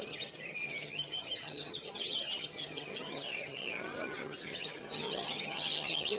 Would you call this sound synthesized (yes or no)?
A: yes